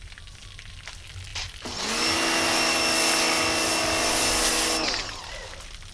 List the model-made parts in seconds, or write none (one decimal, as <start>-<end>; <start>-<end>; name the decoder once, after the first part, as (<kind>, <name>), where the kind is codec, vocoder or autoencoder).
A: none